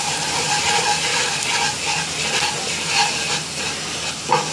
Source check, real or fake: real